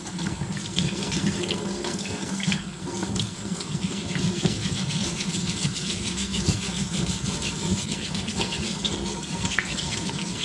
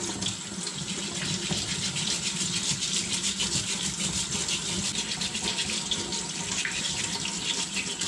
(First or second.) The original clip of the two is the second